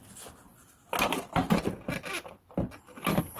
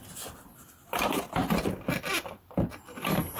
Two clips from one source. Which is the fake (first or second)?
second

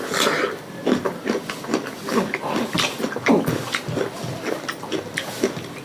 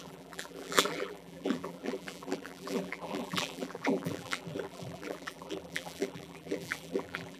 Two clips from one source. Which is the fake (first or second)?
second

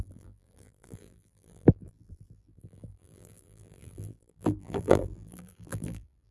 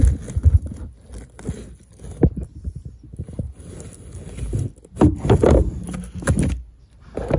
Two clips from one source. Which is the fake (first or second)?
first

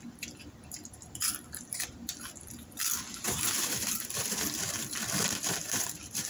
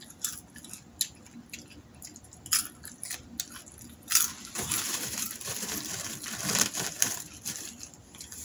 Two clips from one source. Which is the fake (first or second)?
first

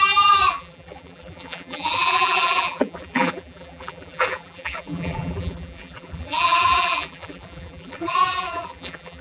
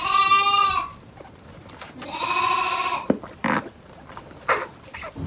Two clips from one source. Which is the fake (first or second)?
first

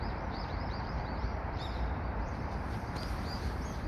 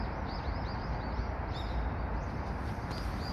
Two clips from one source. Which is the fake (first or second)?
first